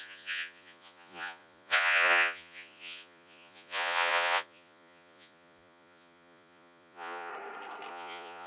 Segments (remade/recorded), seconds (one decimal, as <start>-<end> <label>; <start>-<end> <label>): 0.0-7.3 remade; 7.3-7.9 recorded; 7.9-8.5 remade